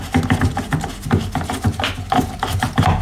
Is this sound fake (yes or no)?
no